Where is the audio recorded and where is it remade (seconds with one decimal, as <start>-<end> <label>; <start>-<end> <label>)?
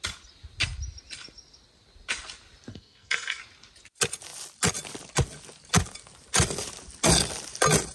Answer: 0.0-2.7 recorded; 2.7-3.4 remade; 3.4-7.9 recorded